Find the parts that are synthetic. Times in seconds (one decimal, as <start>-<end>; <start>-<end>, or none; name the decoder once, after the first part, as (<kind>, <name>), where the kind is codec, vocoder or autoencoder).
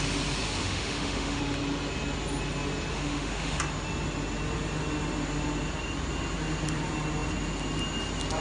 0.6-1.4 (autoencoder, DAC-VAE); 2.9-3.6